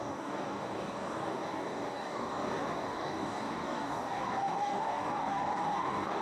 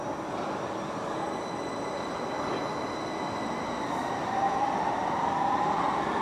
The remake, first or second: first